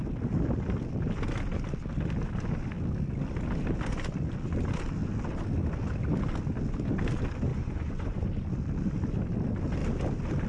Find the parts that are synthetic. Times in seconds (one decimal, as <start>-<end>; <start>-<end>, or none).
7.5-8.2